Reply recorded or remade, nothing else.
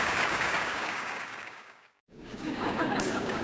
remade